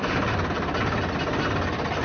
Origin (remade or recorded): recorded